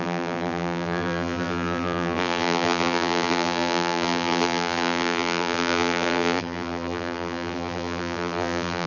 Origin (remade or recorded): remade